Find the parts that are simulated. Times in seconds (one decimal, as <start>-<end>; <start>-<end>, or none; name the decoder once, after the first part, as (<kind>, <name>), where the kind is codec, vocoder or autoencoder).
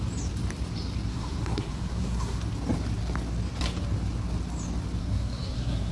1.1-2.4 (codec, SNAC); 5.0-5.9